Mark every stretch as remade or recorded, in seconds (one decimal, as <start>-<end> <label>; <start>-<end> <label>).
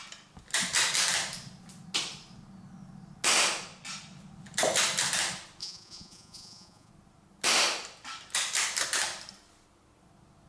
0.0-5.6 recorded; 5.6-6.9 remade; 6.9-10.5 recorded